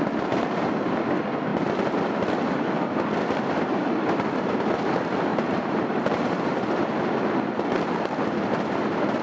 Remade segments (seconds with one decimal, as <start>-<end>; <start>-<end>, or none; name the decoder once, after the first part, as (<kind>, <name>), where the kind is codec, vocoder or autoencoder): 5.3-7.0 (vocoder, BigVGAN v2)